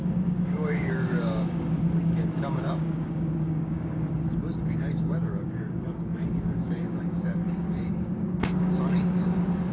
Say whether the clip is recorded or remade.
remade